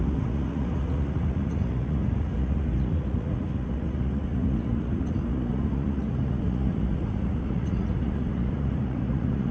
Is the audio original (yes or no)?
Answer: no